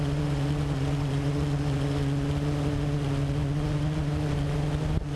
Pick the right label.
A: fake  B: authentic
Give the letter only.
B